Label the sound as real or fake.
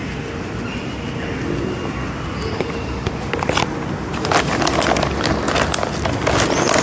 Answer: real